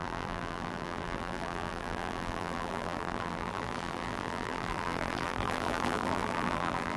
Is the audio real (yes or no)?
no